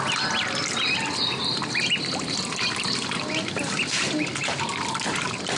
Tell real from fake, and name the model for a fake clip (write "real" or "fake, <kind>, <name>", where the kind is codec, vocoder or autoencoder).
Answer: real